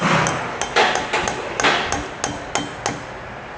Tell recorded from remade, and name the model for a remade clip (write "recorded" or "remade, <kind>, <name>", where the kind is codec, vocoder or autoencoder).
recorded